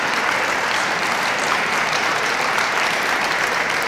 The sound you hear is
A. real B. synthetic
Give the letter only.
B